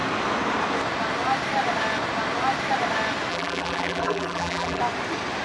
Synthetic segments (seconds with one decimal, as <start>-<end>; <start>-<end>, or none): 3.3-4.8